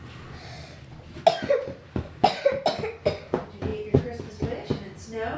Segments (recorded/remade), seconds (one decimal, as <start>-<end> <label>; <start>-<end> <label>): 0.0-5.4 recorded